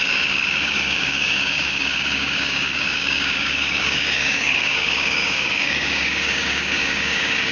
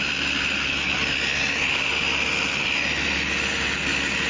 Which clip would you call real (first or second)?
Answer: second